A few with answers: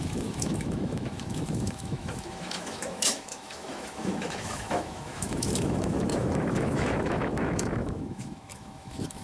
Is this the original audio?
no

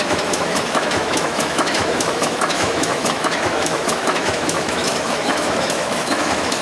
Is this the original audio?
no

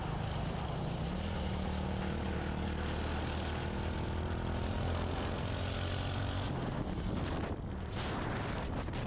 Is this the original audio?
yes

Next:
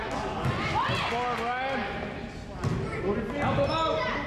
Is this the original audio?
yes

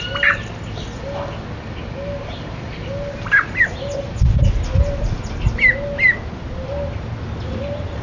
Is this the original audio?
yes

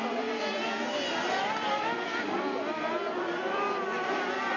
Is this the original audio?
no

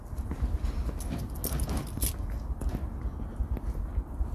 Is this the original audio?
yes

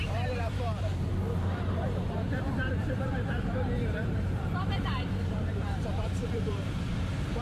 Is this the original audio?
no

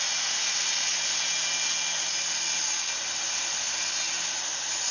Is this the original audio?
yes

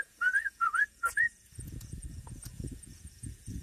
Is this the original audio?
no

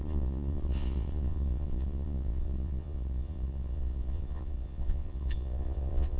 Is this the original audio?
no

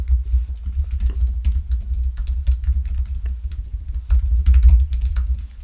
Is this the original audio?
yes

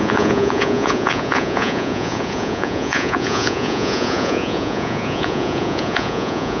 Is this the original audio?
no